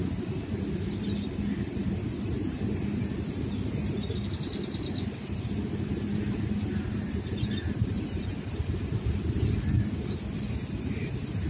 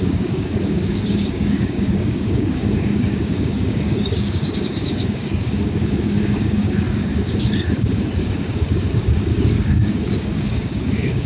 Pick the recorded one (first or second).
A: first